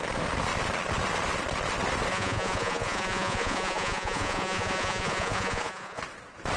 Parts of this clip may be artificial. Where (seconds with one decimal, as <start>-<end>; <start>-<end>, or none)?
2.1-6.0